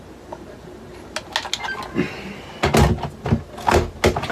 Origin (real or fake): real